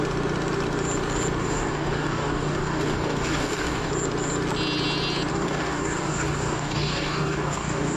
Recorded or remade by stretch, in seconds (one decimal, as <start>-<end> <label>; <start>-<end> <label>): 0.0-1.4 recorded; 1.4-3.9 remade; 3.9-5.3 recorded; 5.3-8.0 remade